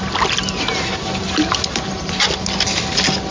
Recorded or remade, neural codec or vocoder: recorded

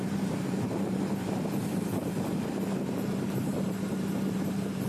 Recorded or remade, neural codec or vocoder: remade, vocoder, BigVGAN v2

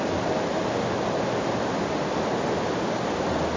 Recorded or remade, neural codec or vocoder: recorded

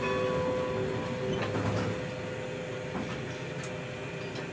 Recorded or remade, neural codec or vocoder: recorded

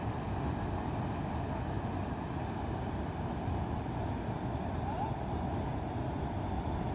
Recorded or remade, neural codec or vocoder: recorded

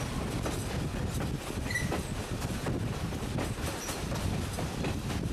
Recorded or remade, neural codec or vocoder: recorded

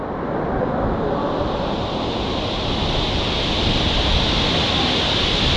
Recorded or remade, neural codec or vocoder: recorded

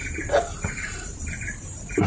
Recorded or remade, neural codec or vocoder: remade, vocoder, BigVGAN v2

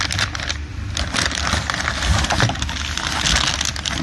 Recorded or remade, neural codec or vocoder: recorded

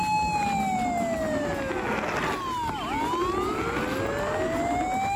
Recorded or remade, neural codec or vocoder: recorded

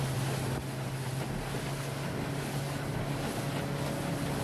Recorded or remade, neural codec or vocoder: recorded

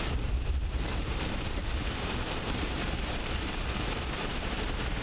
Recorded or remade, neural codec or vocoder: remade, vocoder, BigVGAN v2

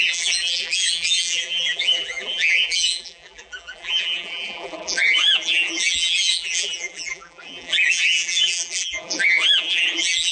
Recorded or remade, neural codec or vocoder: remade, vocoder, BigVGAN v2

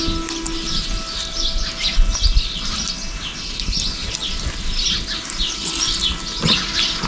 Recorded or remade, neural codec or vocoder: recorded